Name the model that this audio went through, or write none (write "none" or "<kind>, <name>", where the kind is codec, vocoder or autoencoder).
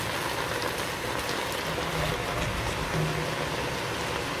none